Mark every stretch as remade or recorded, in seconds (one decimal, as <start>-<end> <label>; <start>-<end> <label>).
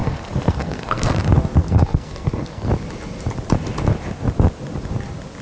0.0-1.2 remade; 1.2-1.6 recorded; 1.6-2.7 remade; 2.7-5.4 recorded